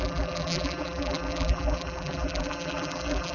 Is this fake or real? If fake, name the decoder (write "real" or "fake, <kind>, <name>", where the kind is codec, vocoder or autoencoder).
fake, vocoder, BigVGAN v2